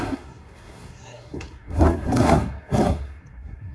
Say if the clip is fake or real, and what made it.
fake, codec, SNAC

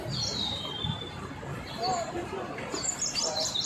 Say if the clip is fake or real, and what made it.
real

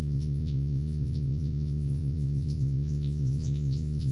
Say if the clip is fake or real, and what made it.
fake, vocoder, Vocos